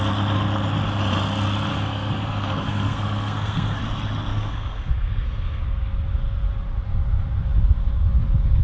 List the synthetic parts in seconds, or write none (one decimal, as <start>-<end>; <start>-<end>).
1.7-3.8; 4.3-5.6

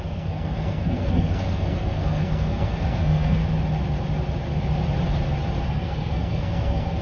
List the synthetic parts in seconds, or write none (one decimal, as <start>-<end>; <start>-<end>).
0.0-3.4; 5.6-7.0

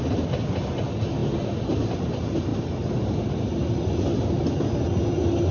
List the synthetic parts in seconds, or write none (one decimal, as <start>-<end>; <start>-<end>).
none

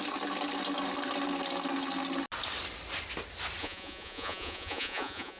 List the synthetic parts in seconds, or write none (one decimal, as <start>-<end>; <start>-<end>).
3.6-5.4

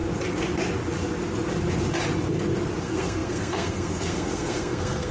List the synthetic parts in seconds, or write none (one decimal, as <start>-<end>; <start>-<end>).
2.8-5.1

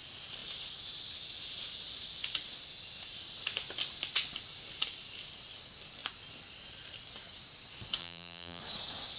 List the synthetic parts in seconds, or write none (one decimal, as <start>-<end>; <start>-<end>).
8.0-8.6